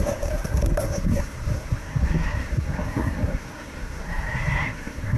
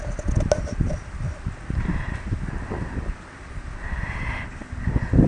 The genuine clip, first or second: second